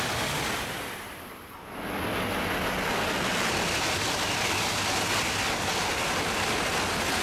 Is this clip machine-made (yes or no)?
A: no